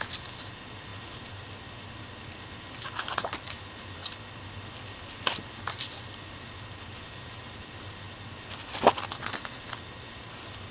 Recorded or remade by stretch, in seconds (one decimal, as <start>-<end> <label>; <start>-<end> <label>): 0.0-10.7 recorded